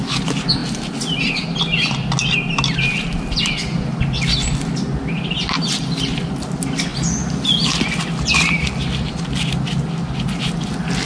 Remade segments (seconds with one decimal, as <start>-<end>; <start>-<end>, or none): none